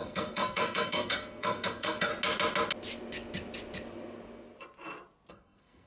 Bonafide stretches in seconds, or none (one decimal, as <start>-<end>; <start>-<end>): 2.1-5.3